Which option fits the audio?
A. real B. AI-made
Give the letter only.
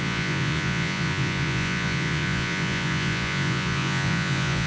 B